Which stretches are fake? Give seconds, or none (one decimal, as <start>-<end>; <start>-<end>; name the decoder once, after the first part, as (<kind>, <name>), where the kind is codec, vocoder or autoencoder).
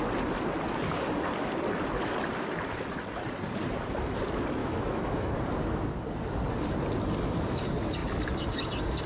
4.6-5.3 (autoencoder, DAC-VAE)